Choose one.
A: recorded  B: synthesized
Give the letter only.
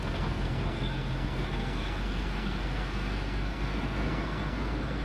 B